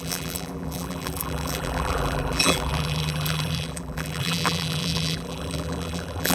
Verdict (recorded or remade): remade